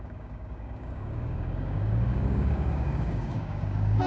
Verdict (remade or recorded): remade